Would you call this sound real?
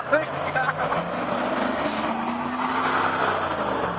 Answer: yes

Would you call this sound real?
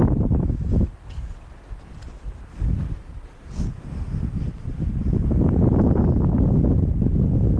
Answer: yes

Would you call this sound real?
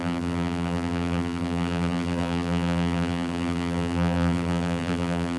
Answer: no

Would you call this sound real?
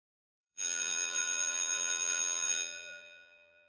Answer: no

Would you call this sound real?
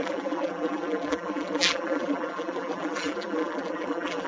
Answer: no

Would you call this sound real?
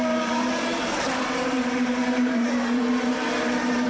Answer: no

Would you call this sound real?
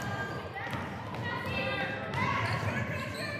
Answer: yes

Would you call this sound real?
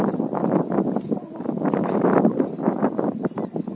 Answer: yes